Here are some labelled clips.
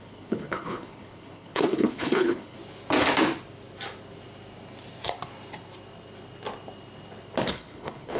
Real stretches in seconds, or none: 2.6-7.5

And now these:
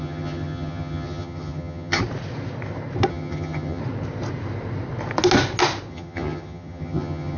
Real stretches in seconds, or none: 2.0-3.1; 3.8-5.9

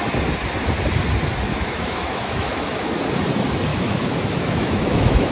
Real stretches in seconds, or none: 0.0-1.5; 3.0-3.7

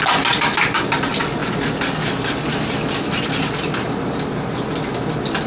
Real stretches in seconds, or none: 0.0-5.5

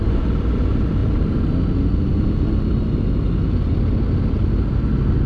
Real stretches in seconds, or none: 0.0-5.3

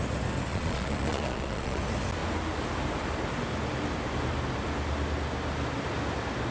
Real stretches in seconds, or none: 0.0-0.5; 1.8-6.5

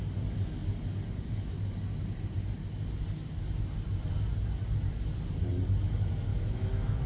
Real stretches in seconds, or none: 0.0-6.3

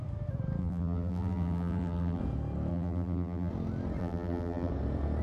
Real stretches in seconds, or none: 0.0-0.6; 2.2-2.7; 3.5-4.0; 4.7-5.2